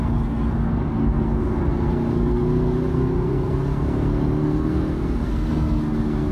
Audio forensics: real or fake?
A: fake